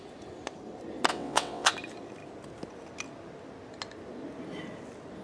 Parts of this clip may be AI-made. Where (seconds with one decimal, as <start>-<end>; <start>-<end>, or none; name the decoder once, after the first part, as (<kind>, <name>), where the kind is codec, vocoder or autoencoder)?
1.1-1.7 (vocoder, WaveNeXt)